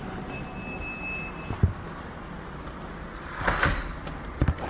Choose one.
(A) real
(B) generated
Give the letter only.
A